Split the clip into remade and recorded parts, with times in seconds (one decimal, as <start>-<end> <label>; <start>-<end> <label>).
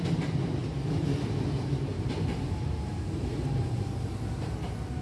0.0-1.9 recorded; 1.9-4.0 remade; 4.0-5.0 recorded